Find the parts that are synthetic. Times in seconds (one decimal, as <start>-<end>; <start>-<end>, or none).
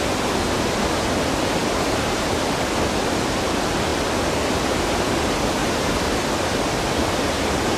1.6-2.4; 5.6-6.1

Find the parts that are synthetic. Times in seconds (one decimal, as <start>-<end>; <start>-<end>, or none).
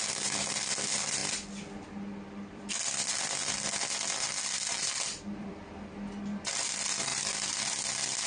0.0-7.1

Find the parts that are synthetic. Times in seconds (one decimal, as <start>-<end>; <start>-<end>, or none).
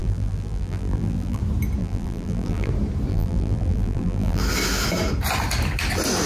0.0-1.4; 1.8-2.7; 3.1-4.4